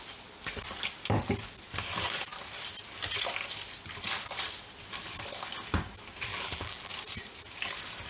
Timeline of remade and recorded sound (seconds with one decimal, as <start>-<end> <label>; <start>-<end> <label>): 0.0-6.3 recorded; 6.3-6.9 remade; 6.9-8.1 recorded